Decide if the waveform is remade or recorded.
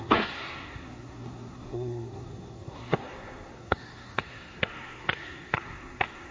remade